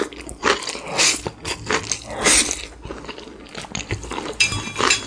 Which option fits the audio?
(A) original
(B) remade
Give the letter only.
A